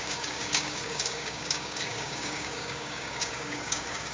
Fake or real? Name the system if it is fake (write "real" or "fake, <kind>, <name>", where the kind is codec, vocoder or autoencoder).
fake, codec, DAC